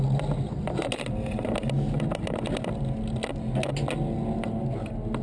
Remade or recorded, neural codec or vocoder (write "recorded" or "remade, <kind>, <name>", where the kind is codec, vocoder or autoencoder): recorded